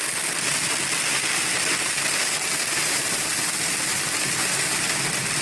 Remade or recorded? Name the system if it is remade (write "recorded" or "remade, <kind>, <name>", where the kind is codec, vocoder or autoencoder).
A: recorded